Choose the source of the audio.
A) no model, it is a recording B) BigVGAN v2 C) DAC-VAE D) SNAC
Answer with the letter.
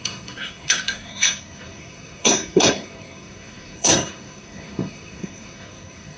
D